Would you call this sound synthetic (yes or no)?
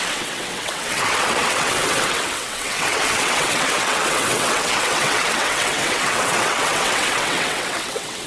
yes